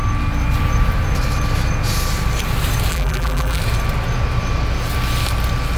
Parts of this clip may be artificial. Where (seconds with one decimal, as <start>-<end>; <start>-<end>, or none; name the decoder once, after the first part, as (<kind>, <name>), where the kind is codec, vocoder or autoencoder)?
2.9-3.6 (vocoder, BigVGAN v2)